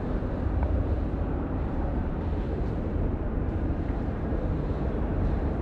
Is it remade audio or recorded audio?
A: remade